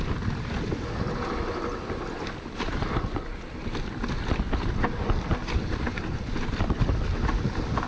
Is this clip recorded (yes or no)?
yes